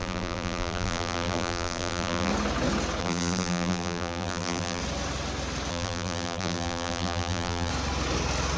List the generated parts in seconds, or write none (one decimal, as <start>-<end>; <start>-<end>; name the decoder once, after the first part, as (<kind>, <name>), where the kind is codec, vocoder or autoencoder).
0.0-2.3 (vocoder, BigVGAN v2); 3.0-4.8; 5.7-7.7